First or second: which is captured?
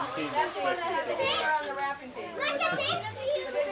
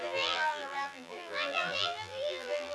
first